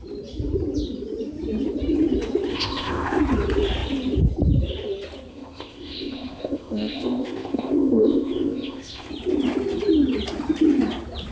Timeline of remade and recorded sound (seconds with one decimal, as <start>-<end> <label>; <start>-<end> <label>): 0.0-2.5 recorded; 2.5-3.2 remade; 3.2-5.3 recorded; 5.3-9.1 remade; 9.1-11.3 recorded